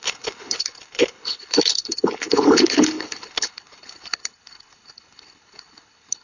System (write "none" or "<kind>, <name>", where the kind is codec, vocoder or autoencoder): codec, HILCodec